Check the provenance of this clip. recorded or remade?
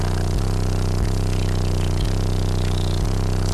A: recorded